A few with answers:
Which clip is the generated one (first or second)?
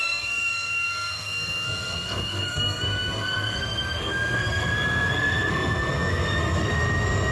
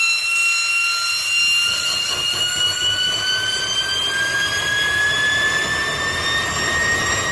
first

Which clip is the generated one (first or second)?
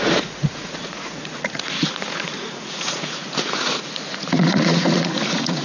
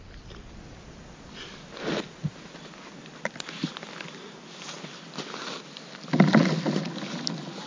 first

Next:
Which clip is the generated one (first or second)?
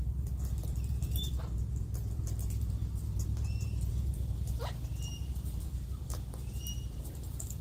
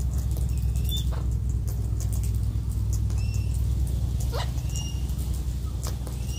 first